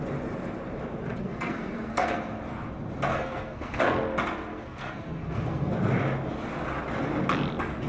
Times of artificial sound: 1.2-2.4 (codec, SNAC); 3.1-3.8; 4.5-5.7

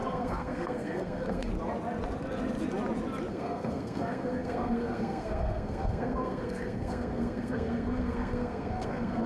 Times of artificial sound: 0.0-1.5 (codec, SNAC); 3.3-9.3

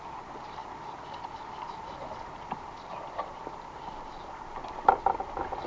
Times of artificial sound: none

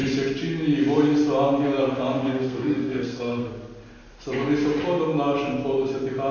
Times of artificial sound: 2.2-3.5 (codec, SNAC)